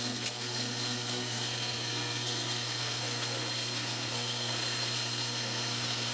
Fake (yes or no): yes